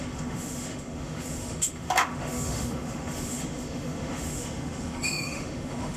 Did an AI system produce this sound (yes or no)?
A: yes